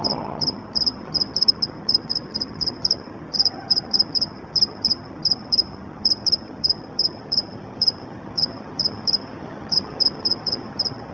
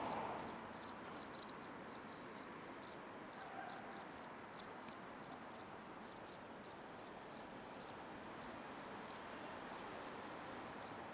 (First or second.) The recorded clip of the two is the second